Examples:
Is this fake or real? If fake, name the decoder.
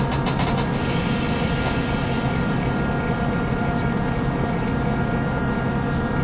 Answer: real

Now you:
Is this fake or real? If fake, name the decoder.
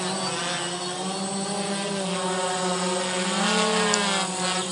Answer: real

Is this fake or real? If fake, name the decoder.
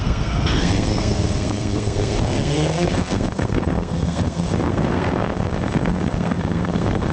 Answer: fake, codec, SNAC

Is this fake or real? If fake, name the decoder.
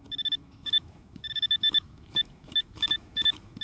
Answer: fake, autoencoder, DAC-VAE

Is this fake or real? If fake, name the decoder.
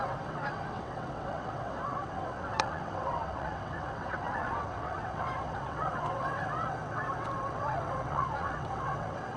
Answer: fake, vocoder, WaveNeXt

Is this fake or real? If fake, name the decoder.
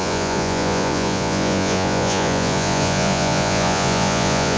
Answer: fake, vocoder, Vocos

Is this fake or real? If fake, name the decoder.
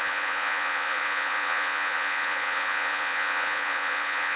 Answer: fake, vocoder, Vocos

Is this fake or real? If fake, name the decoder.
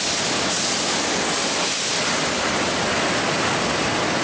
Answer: real